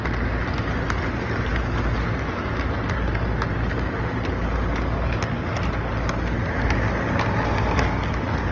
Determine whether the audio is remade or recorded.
recorded